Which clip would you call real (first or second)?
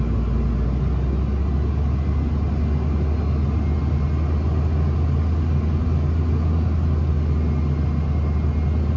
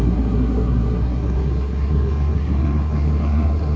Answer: first